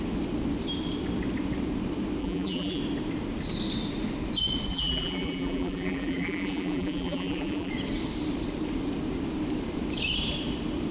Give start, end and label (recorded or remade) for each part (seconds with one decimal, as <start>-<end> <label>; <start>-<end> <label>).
0.0-2.2 recorded; 2.2-2.8 remade; 2.8-4.7 recorded; 4.7-7.7 remade; 7.7-10.9 recorded